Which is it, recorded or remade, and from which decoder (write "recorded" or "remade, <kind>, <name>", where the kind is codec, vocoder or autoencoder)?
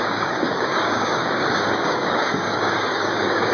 remade, codec, DAC